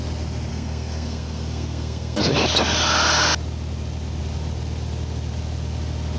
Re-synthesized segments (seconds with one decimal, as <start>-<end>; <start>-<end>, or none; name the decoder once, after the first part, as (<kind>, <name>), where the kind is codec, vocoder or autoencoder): 0.5-2.3 (codec, SNAC)